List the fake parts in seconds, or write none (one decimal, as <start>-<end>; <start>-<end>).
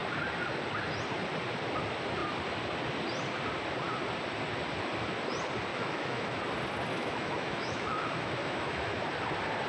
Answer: 5.7-6.4; 6.9-9.1